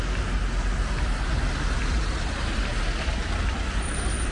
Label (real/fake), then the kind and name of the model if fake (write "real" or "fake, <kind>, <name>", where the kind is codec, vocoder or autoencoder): real